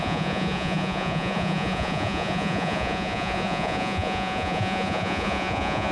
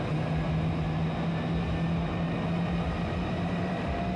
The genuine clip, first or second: second